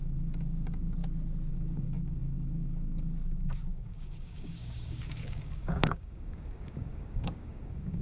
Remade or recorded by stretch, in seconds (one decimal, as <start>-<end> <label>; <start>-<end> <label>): 0.0-1.0 remade; 1.0-1.5 recorded; 1.5-8.0 remade